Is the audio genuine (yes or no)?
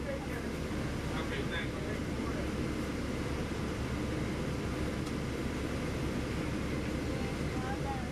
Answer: yes